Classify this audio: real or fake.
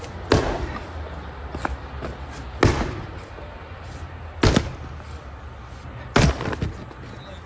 real